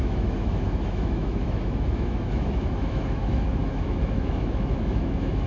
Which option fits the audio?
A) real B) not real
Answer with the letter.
B